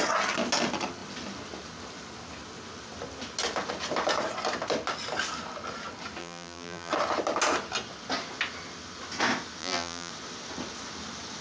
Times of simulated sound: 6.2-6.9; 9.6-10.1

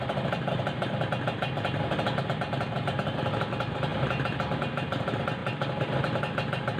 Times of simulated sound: none